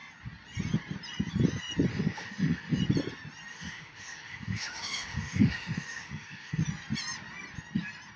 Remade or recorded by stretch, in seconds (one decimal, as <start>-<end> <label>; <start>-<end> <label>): 0.0-1.9 recorded; 1.9-2.8 remade; 2.8-3.5 recorded; 3.5-6.6 remade; 6.6-8.2 recorded

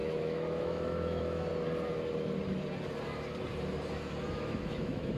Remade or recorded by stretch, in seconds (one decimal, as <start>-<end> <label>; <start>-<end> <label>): 0.0-1.5 remade; 1.5-4.3 recorded; 4.3-5.2 remade

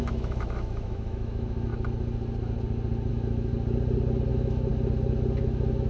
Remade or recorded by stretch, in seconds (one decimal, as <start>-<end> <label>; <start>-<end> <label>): 0.0-1.7 remade; 1.7-3.1 recorded; 3.1-3.5 remade; 3.5-4.3 recorded; 4.3-4.7 remade; 4.7-5.4 recorded; 5.4-5.9 remade

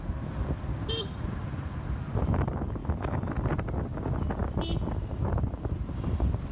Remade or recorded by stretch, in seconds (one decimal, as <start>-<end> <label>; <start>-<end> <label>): 0.0-2.8 recorded; 2.8-3.3 remade; 3.3-6.5 recorded

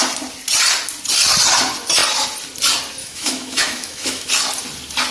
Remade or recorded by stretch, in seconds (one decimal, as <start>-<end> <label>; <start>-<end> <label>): 0.0-3.0 recorded; 3.0-4.3 remade; 4.3-5.1 recorded

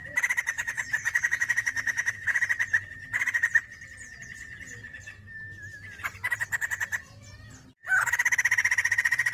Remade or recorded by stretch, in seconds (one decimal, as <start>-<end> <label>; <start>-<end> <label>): 0.0-0.5 recorded; 0.5-2.4 remade; 2.4-9.3 recorded